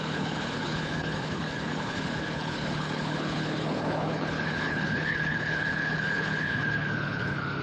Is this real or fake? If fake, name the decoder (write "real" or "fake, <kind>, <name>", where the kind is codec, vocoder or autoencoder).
fake, codec, HILCodec